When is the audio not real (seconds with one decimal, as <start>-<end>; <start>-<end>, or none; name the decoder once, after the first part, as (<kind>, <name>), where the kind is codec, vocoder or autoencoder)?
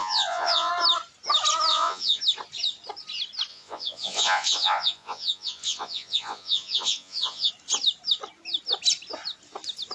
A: 0.0-0.7 (vocoder, Vocos); 1.7-2.2; 3.5-7.5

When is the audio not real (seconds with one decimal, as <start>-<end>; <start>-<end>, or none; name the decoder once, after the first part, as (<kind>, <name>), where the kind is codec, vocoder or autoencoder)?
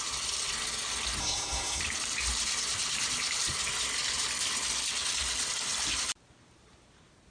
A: 1.2-1.8 (codec, SNAC)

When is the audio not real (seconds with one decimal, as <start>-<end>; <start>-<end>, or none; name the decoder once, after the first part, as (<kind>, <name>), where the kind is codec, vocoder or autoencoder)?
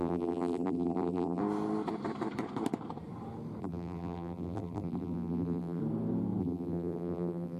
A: 0.0-1.4 (vocoder, BigVGAN v2); 3.6-5.8; 6.4-7.6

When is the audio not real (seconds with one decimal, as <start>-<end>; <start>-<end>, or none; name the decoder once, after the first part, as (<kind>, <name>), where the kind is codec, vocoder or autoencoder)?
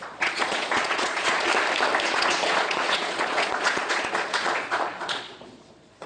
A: 0.0-1.5 (vocoder, Vocos); 2.1-6.1